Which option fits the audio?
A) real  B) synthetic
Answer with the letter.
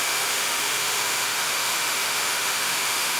B